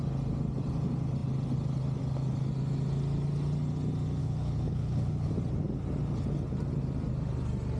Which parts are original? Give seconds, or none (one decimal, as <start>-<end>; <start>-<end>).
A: 0.0-4.2; 5.3-7.8